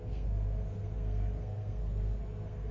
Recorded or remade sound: remade